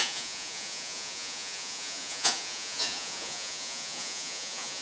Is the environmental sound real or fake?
fake